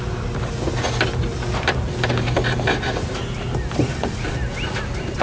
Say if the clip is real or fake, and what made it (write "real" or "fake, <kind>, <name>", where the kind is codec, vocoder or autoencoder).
real